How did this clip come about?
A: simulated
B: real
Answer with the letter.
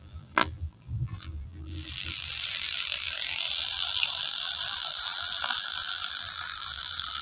A